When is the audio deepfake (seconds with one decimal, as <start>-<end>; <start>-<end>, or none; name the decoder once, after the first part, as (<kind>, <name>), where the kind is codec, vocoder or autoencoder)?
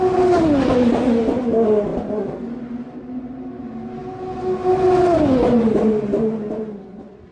none